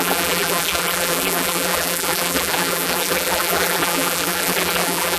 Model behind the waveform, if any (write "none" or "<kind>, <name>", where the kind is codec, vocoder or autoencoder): vocoder, BigVGAN v2